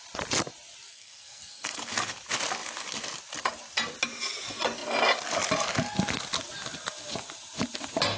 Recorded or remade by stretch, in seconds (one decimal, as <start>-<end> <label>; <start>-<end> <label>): 0.0-0.9 recorded; 0.9-1.8 remade; 1.8-8.2 recorded